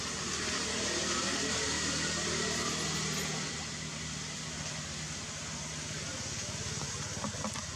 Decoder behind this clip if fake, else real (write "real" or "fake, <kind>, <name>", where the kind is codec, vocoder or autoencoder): real